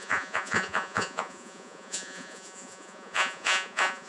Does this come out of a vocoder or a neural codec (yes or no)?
yes